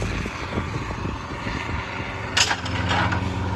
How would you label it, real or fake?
real